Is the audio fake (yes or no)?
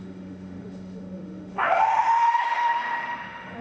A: yes